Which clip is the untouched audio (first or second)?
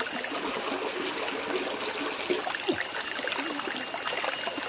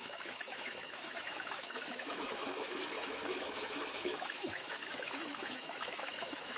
first